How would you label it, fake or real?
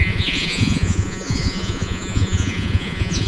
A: fake